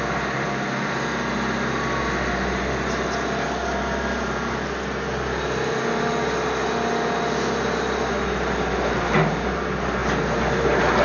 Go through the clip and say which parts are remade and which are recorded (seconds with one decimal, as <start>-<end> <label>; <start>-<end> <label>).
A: 0.0-11.0 recorded